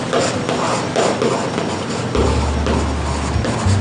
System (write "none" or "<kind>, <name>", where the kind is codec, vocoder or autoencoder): none